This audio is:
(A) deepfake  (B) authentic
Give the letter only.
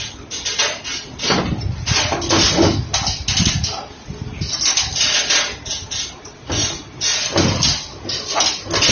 B